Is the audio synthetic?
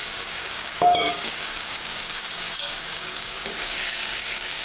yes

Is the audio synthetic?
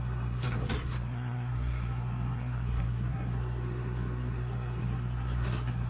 yes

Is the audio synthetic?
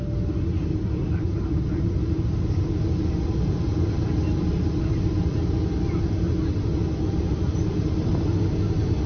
no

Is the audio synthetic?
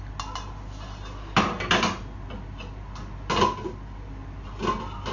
no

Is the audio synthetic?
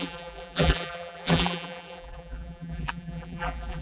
yes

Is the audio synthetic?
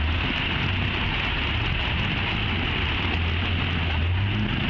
no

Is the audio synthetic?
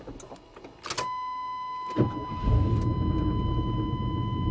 no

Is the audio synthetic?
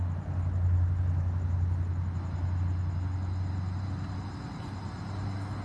no